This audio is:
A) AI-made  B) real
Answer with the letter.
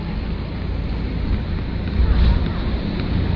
B